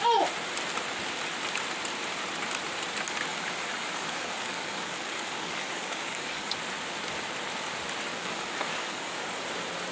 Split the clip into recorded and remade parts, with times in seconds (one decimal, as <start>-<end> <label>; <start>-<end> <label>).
0.0-3.3 recorded; 3.3-6.5 remade; 6.5-8.1 recorded; 8.1-9.4 remade; 9.4-9.9 recorded